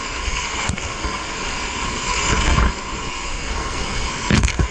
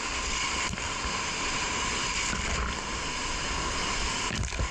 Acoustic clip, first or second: second